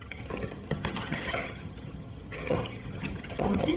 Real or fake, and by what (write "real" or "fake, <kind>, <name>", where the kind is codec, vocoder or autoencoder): fake, vocoder, HiFi-GAN